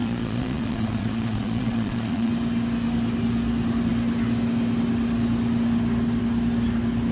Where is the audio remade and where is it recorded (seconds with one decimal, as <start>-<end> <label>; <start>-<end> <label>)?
0.0-2.3 remade; 2.3-7.1 recorded